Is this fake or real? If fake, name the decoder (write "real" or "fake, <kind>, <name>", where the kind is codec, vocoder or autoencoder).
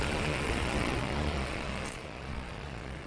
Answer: fake, vocoder, Vocos